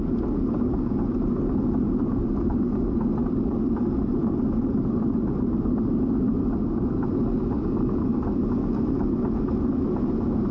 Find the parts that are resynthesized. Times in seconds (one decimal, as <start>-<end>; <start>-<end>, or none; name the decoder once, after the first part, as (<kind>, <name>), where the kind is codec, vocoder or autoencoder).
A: none